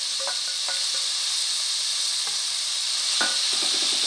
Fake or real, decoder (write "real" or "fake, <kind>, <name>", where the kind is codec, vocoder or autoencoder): fake, vocoder, BigVGAN v2